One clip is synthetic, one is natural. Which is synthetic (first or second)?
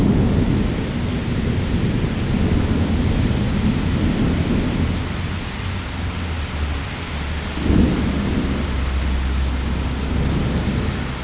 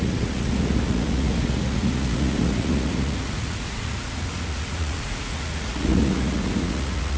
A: second